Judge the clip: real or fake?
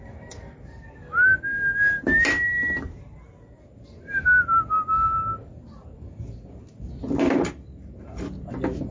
real